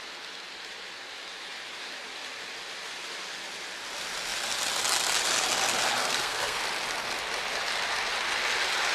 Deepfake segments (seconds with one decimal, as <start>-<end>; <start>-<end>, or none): 6.0-6.6